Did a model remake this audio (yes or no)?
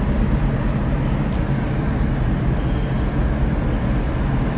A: no